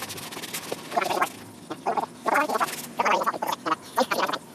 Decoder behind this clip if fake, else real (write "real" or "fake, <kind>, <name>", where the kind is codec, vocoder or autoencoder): real